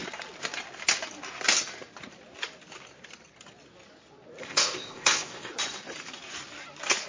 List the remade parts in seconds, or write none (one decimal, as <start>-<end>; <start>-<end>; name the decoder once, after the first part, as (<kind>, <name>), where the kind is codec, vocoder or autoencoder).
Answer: 4.4-5.5 (codec, ZipCodec)